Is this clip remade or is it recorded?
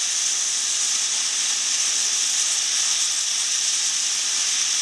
recorded